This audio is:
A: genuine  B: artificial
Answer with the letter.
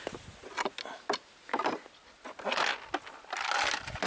A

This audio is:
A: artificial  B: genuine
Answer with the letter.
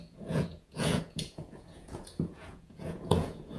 A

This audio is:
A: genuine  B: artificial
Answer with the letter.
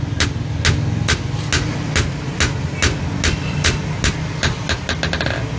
A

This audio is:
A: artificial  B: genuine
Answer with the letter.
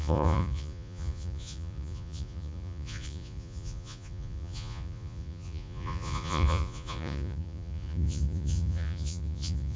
A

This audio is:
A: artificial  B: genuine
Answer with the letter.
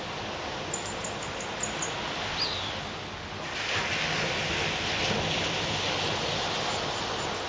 B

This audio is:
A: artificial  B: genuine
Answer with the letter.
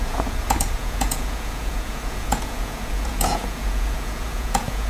A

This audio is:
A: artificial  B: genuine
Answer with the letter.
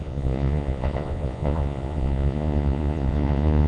A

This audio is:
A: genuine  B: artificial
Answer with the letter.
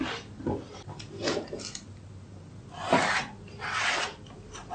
A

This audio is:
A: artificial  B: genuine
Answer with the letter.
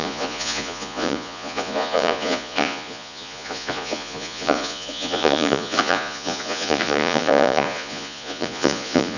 A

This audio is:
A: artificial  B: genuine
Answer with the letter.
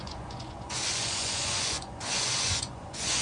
A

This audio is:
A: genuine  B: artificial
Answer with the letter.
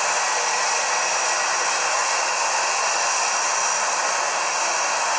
A